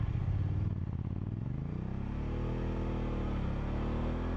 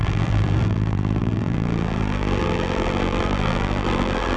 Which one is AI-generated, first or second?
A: second